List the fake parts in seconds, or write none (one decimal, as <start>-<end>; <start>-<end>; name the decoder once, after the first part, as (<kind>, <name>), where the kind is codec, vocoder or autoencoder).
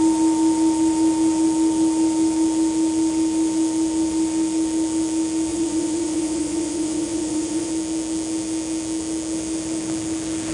5.5-7.7 (vocoder, Vocos)